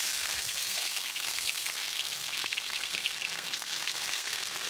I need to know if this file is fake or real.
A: fake